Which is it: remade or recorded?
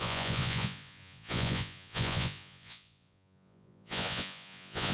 remade